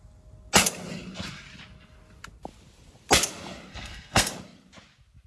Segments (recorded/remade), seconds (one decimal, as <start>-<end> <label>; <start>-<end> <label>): 0.0-3.7 recorded; 3.7-4.3 remade; 4.3-5.3 recorded